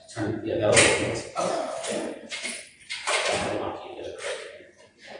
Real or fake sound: fake